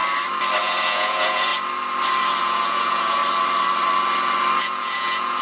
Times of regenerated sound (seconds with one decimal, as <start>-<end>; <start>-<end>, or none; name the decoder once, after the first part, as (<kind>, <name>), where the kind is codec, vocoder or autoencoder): 0.6-1.5 (vocoder, Vocos); 2.4-3.2; 4.6-5.4